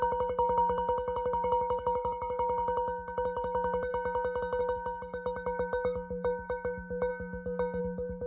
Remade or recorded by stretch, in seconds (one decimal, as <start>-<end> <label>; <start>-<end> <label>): 0.0-3.9 remade; 3.9-4.6 recorded; 4.6-7.1 remade; 7.1-7.8 recorded; 7.8-8.3 remade